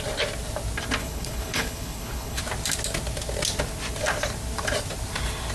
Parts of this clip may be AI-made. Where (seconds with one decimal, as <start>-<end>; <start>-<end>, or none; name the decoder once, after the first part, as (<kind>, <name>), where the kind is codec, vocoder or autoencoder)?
1.0-2.4 (codec, HILCodec)